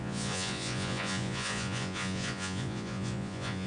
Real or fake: fake